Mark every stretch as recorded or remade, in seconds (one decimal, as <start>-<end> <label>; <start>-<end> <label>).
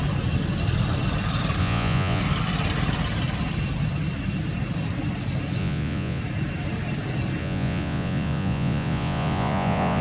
0.0-1.6 recorded; 1.6-2.2 remade; 2.2-5.6 recorded; 5.6-6.2 remade; 6.2-7.4 recorded; 7.4-10.0 remade